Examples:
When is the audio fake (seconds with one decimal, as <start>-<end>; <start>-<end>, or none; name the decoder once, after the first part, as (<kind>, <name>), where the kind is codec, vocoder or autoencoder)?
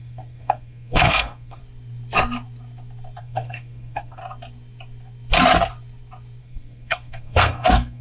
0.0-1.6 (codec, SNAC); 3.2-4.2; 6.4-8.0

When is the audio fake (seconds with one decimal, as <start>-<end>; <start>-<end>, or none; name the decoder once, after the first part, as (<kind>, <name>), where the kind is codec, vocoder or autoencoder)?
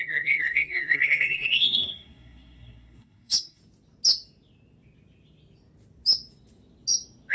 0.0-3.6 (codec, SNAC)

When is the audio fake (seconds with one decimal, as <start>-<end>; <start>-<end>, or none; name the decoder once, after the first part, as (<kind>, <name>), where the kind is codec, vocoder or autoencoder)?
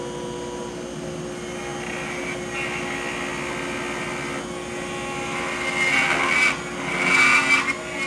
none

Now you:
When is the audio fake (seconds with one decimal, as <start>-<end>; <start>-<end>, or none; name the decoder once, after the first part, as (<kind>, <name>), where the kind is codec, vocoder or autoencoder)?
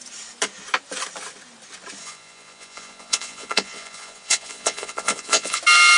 2.0-5.6 (vocoder, Vocos)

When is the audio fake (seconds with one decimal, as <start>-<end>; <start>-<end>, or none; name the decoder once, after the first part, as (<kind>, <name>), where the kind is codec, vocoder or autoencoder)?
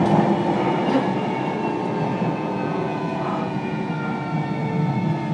2.1-3.9 (vocoder, Vocos)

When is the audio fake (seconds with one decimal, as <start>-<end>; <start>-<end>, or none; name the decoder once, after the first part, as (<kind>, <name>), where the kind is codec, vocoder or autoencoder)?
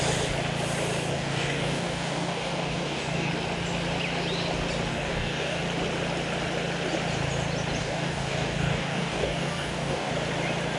1.1-3.3 (codec, DAC); 4.9-5.6; 7.8-10.1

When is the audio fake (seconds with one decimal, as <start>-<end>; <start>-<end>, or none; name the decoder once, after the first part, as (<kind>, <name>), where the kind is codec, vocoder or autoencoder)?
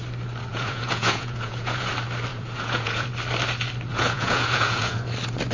0.5-1.9 (vocoder, Vocos); 2.3-3.1; 3.9-5.0